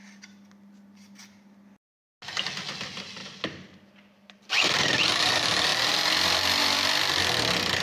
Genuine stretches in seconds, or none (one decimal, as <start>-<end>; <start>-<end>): 0.0-3.2; 4.5-5.7; 7.2-7.8